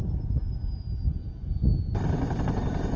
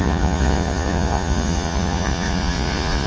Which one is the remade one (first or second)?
second